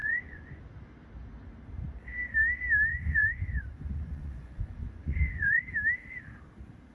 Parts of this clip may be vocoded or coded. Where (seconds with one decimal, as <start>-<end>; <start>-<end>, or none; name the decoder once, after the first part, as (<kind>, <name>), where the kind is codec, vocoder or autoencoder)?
0.0-0.6 (vocoder, Vocos); 2.9-5.6